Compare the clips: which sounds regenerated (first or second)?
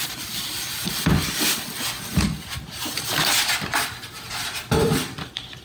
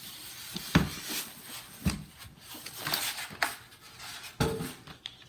first